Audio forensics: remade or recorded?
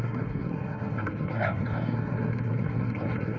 remade